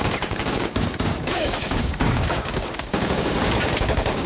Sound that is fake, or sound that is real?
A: fake